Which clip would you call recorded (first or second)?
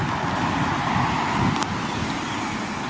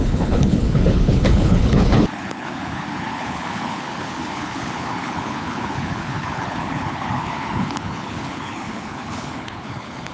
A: first